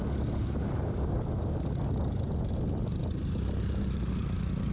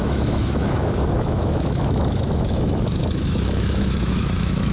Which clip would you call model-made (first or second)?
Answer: second